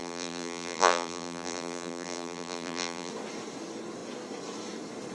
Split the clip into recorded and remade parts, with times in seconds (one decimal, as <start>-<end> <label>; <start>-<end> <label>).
0.0-3.1 remade; 3.1-5.1 recorded